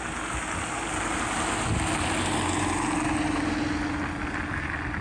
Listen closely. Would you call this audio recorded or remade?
recorded